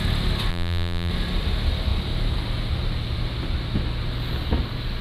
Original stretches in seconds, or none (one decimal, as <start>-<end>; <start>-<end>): 0.0-0.5; 1.1-5.0